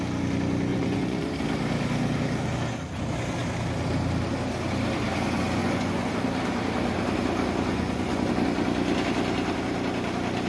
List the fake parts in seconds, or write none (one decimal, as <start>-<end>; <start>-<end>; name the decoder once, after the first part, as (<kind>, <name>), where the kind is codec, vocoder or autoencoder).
0.7-1.3 (vocoder, Vocos); 5.6-6.1; 7.7-8.3